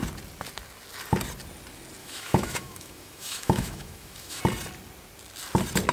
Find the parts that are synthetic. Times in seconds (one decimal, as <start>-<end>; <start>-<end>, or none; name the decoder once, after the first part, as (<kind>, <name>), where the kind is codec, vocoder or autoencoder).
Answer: 2.0-4.4 (autoencoder, DAC-VAE)